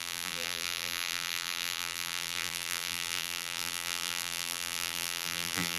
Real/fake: fake